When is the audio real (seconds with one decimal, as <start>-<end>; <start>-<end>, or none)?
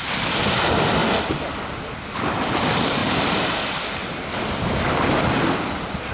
0.0-3.0; 4.6-6.1